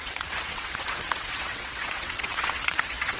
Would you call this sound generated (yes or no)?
yes